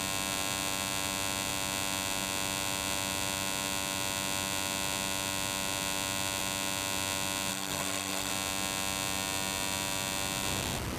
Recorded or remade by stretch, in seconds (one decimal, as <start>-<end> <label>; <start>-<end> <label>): 0.0-7.5 recorded; 7.5-8.3 remade; 8.3-11.0 recorded